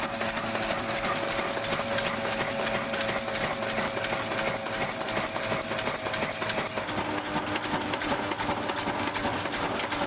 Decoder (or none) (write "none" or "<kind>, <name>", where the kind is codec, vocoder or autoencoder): none